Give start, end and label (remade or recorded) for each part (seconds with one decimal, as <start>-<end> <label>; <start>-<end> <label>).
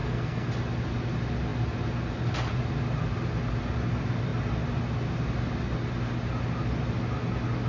0.0-0.5 remade; 0.5-7.7 recorded